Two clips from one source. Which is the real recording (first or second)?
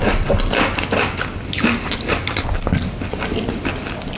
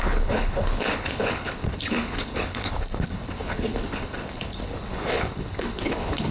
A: first